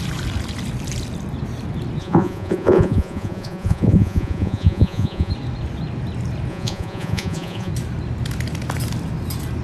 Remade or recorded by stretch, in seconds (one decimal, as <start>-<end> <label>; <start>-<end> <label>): 0.0-2.0 recorded; 2.0-5.3 remade; 5.3-6.5 recorded; 6.5-7.7 remade; 7.7-9.6 recorded